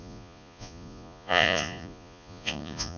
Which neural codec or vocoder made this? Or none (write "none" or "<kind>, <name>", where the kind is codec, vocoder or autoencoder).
vocoder, Vocos